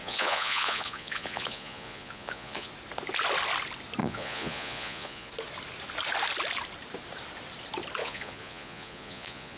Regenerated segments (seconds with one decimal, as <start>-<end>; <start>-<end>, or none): 0.0-2.7; 4.0-5.3; 8.0-9.6